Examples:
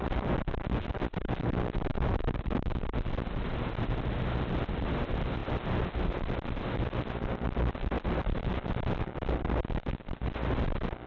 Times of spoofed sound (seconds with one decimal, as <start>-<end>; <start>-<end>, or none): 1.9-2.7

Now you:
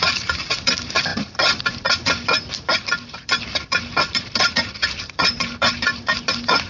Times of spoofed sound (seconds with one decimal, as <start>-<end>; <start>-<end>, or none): 0.0-6.7

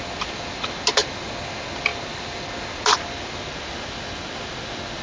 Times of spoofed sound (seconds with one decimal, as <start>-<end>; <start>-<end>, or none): none

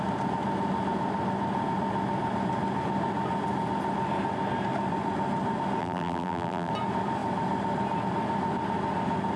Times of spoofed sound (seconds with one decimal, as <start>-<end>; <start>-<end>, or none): 5.8-6.7